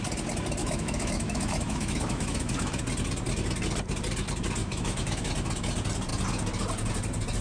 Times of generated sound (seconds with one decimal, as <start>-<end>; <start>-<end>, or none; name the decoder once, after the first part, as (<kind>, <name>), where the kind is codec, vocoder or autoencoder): 0.6-2.8 (autoencoder, DAC-VAE); 4.6-5.3

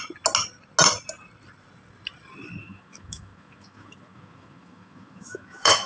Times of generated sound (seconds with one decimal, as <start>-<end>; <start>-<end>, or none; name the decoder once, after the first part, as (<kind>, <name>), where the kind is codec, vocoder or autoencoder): 2.6-5.9 (autoencoder, DAC-VAE)

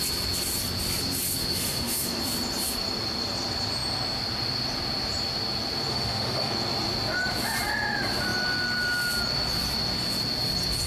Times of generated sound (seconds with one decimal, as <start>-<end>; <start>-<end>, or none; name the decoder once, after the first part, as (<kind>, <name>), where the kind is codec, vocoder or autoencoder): 1.4-2.2 (autoencoder, DAC-VAE); 5.9-6.5